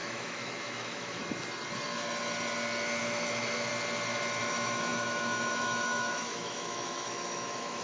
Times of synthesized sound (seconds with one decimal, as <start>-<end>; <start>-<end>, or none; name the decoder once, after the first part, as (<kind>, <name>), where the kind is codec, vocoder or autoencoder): 0.0-1.2 (autoencoder, DAC-VAE); 3.0-3.7; 4.4-7.8